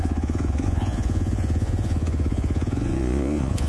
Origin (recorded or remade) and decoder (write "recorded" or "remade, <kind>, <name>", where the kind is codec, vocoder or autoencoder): remade, vocoder, Vocos